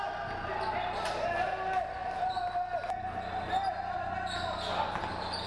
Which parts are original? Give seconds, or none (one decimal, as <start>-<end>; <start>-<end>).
0.0-5.5

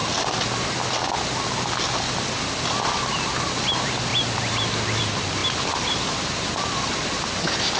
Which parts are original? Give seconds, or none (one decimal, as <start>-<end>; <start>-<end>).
0.0-7.8